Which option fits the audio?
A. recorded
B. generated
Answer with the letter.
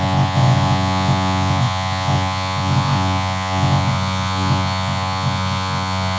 B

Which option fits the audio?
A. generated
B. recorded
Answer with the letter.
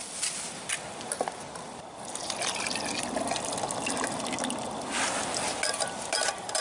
B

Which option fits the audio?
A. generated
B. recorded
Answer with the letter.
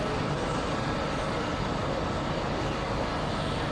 B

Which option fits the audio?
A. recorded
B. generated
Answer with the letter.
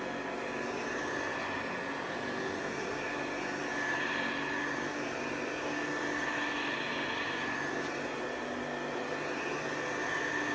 A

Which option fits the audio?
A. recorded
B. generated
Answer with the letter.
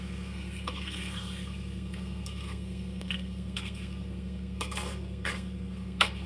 B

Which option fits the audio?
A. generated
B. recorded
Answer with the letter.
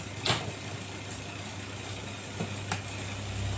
B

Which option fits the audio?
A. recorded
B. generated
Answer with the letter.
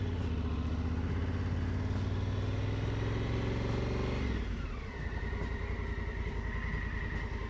A